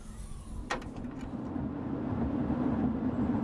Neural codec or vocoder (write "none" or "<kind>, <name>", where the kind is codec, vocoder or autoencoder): none